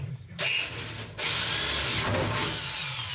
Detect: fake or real real